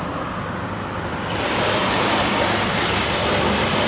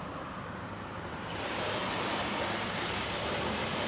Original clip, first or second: first